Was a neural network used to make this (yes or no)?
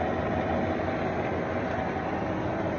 yes